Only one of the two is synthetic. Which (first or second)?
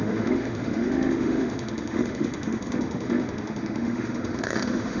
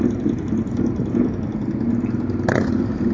first